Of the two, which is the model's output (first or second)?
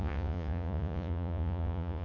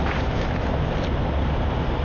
first